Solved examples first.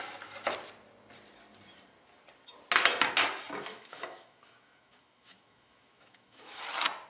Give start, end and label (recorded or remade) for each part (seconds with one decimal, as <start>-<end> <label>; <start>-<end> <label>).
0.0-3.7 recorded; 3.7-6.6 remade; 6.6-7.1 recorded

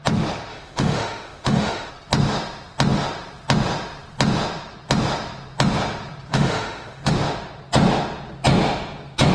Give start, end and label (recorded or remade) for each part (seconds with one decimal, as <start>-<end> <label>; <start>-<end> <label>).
0.0-0.5 recorded; 0.5-1.9 remade; 1.9-6.3 recorded; 6.3-7.1 remade; 7.1-9.3 recorded

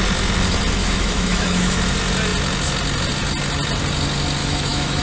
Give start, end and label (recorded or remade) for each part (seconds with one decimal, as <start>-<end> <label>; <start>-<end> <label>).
0.0-0.8 recorded; 0.8-1.8 remade; 1.8-4.4 recorded; 4.4-5.0 remade